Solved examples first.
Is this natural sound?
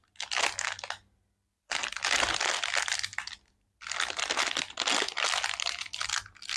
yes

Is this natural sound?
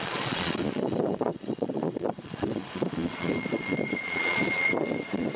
no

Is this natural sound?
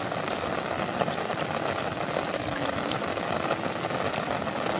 yes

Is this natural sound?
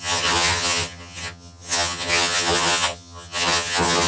no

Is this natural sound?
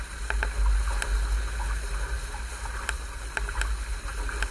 yes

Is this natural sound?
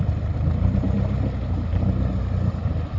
yes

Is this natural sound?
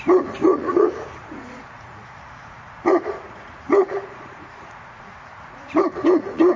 no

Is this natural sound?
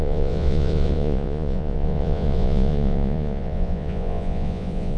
no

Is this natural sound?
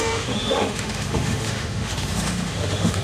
no